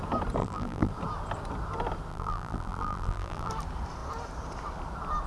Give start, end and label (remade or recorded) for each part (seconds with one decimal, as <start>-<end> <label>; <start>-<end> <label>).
0.0-0.4 recorded; 0.4-0.9 remade; 0.9-2.1 recorded; 2.1-3.5 remade; 3.5-5.3 recorded